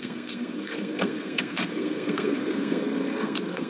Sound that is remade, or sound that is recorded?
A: remade